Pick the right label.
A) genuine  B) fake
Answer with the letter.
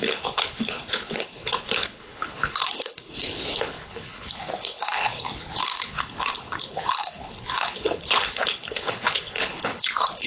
B